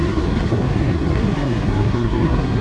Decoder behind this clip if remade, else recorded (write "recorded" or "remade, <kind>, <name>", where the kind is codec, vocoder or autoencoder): remade, codec, SNAC